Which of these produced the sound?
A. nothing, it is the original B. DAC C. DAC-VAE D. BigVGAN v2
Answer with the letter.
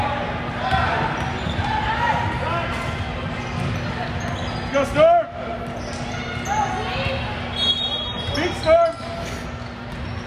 A